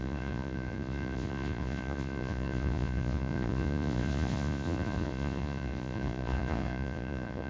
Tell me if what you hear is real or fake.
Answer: fake